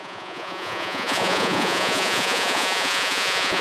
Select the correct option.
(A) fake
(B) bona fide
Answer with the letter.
A